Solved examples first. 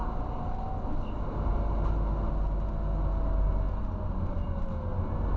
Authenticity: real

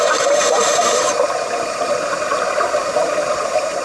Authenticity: fake